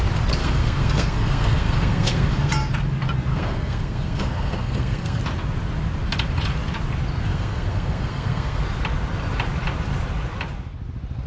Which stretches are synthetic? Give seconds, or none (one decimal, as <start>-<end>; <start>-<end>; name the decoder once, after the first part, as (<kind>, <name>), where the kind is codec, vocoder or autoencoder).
0.4-2.5 (codec, SNAC); 3.3-5.2; 7.3-8.6